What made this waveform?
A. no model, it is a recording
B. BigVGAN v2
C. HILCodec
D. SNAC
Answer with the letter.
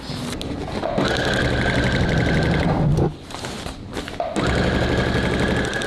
A